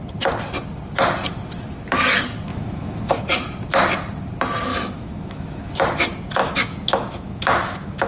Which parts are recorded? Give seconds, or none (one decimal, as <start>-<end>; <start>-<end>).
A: 0.0-2.5; 3.1-4.7; 5.7-6.4